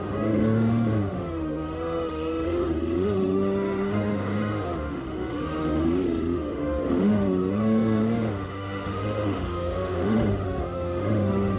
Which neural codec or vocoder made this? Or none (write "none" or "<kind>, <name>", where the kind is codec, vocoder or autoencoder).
autoencoder, DAC-VAE